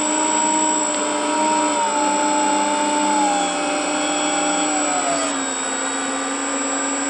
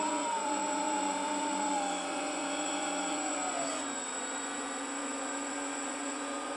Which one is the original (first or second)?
first